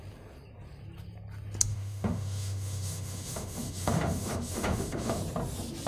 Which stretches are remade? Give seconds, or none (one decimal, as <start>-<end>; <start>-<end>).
1.7-5.2